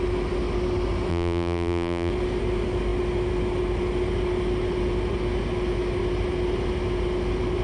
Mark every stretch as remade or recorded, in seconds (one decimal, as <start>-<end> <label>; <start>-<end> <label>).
0.0-1.1 recorded; 1.1-2.1 remade; 2.1-7.6 recorded